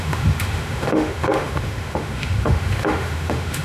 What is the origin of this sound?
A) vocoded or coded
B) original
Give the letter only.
A